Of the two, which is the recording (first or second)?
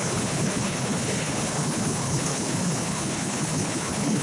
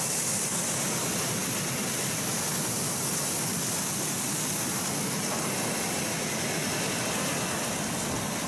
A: second